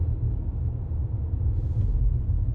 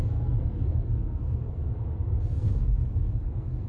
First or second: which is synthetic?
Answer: second